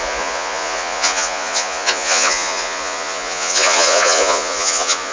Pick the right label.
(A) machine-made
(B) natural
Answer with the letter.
A